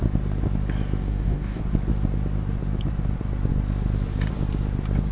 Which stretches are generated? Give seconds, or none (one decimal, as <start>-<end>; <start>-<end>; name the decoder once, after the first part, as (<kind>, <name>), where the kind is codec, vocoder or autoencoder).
1.0-1.6 (codec, DAC)